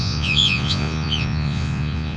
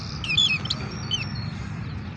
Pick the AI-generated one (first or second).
first